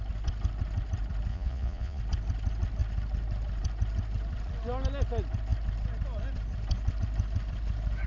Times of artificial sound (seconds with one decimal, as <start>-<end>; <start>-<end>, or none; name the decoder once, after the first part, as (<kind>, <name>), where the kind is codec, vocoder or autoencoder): 1.3-2.0 (vocoder, Vocos)